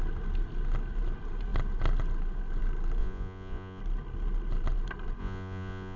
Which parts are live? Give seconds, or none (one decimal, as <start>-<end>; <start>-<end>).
0.0-3.0; 3.8-5.2